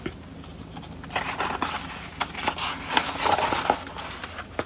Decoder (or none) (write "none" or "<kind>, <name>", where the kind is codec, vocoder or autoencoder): none